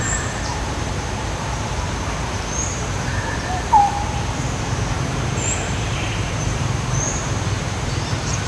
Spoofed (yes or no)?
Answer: yes